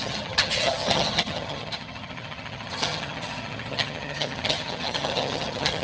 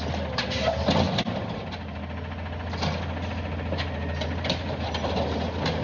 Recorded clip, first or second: second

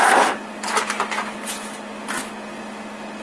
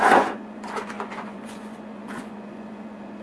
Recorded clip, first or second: first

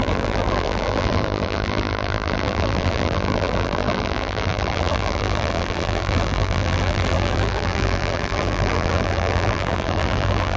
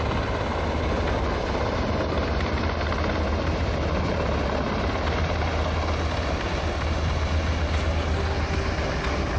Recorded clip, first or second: second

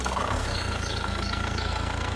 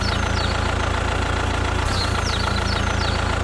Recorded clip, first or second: second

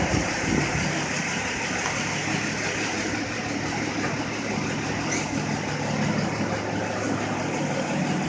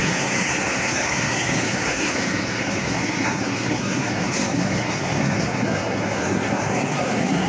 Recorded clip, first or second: first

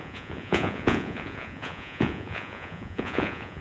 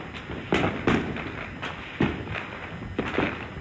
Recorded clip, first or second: second